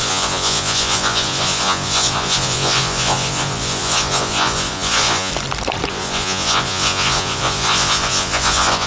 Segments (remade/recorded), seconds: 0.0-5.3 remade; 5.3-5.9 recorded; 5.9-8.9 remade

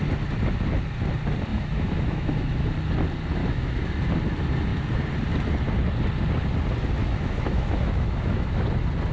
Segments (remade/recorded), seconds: 0.0-1.5 recorded; 1.5-2.7 remade; 2.7-3.4 recorded; 3.4-3.9 remade; 3.9-7.0 recorded; 7.0-8.6 remade; 8.6-9.1 recorded

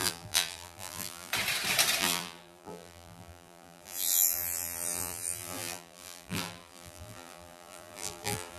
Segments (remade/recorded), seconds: 0.0-1.3 remade; 1.3-2.0 recorded; 2.0-8.6 remade

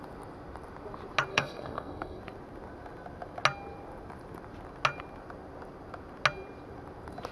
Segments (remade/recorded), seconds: 0.0-1.3 recorded; 1.3-2.2 remade; 2.2-7.3 recorded

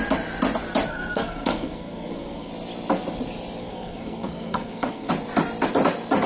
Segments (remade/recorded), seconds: 0.0-0.9 recorded; 0.9-2.5 remade; 2.5-3.6 recorded; 3.6-5.1 remade; 5.1-6.3 recorded

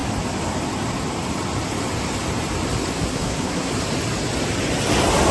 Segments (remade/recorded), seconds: 0.0-3.1 recorded; 3.1-3.7 remade; 3.7-5.3 recorded

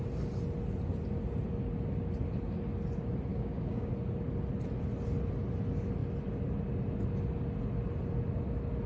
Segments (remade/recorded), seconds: 0.0-3.3 recorded; 3.3-3.9 remade; 3.9-8.9 recorded